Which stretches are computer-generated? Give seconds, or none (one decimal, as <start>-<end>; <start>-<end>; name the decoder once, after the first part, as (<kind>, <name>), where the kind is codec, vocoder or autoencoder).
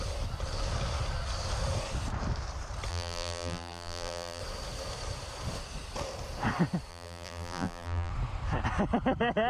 2.9-4.4 (vocoder, BigVGAN v2); 6.9-8.1